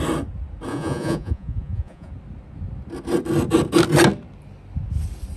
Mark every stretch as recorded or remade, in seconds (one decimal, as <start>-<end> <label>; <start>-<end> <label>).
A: 0.0-0.7 recorded; 0.7-2.1 remade; 2.1-5.4 recorded